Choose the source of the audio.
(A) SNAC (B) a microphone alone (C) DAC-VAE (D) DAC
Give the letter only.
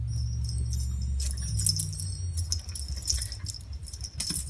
B